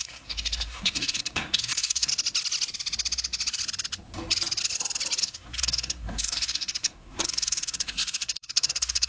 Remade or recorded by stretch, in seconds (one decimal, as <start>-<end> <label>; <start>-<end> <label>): 0.0-2.1 remade; 2.1-5.2 recorded; 5.2-9.1 remade